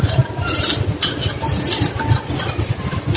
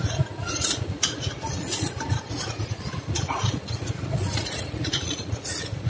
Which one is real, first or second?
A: first